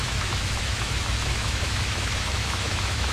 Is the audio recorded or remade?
remade